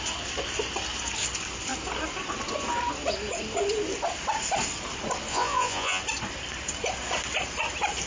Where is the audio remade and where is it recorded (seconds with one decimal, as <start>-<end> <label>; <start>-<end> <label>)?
0.0-5.3 recorded; 5.3-6.0 remade; 6.0-8.1 recorded